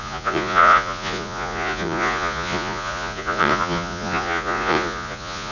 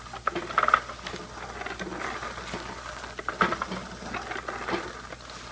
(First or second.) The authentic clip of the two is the second